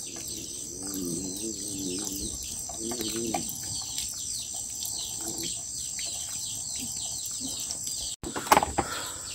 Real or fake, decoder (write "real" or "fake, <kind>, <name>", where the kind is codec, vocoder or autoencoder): real